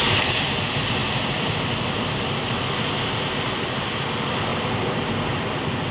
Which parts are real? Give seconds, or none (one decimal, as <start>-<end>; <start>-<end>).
0.0-5.9